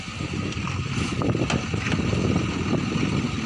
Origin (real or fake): real